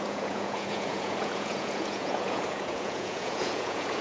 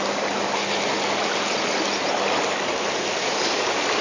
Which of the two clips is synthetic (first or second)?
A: first